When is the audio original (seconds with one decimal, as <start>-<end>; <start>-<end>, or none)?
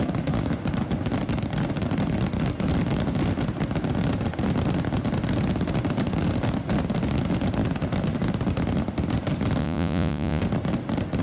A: 0.0-9.6; 10.4-11.2